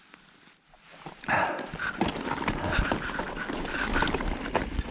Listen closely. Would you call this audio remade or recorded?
recorded